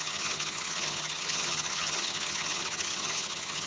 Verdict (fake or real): fake